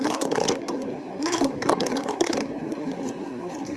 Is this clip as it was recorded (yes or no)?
no